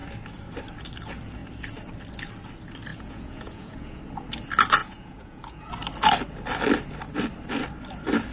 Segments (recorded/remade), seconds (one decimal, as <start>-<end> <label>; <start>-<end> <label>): 0.0-2.9 recorded; 2.9-4.0 remade; 4.0-4.8 recorded; 4.8-5.7 remade; 5.7-8.3 recorded